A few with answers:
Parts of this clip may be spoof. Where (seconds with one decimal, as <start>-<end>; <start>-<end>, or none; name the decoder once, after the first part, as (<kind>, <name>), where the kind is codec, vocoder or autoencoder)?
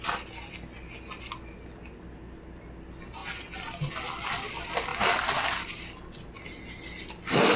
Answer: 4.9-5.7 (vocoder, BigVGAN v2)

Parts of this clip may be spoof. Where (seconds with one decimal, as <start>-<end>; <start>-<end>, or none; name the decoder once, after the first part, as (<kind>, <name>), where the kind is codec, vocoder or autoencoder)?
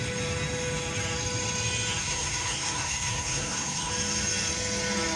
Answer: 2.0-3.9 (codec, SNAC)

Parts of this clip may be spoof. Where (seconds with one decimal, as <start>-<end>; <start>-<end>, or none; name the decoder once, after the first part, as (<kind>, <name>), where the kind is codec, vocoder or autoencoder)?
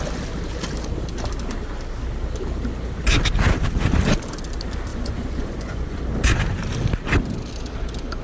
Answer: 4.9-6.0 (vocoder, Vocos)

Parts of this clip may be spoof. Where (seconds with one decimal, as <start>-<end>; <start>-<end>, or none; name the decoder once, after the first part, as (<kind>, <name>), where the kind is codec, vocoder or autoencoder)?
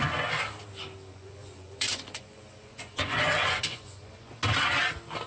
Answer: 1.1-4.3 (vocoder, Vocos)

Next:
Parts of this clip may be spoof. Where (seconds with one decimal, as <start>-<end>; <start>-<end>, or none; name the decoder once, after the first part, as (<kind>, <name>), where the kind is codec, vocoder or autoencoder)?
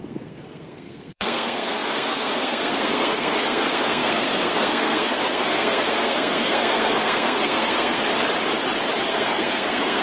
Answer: 0.0-8.1 (codec, SNAC); 9.1-10.0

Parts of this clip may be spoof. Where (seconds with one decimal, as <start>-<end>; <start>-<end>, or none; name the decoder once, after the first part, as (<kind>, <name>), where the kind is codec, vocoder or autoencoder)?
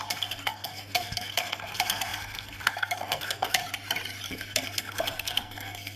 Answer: 0.0-3.6 (codec, SNAC); 4.3-6.0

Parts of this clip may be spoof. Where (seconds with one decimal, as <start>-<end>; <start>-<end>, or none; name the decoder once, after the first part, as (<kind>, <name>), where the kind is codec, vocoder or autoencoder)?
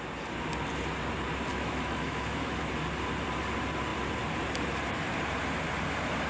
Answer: 1.5-2.7 (autoencoder, DAC-VAE)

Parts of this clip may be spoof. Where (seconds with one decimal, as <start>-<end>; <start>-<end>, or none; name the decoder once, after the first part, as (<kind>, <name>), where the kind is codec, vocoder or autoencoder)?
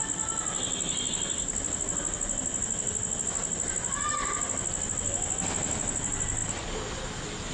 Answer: none